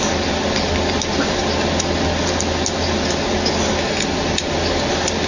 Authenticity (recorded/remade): recorded